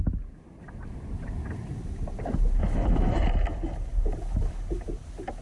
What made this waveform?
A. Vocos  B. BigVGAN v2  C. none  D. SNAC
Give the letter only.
C